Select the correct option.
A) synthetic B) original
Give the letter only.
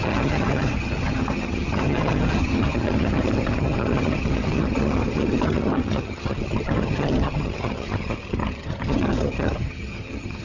A